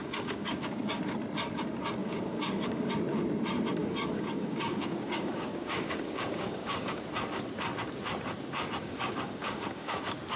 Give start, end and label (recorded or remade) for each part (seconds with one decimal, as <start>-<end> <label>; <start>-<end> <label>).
0.0-1.0 remade; 1.0-2.0 recorded; 2.0-2.9 remade; 2.9-3.8 recorded; 3.8-7.0 remade; 7.0-8.8 recorded; 8.8-10.0 remade; 10.0-10.4 recorded